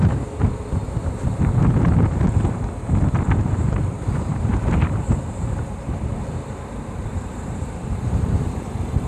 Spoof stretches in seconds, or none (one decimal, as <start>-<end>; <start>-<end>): 0.0-0.8; 3.5-9.1